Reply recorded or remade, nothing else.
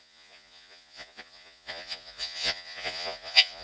remade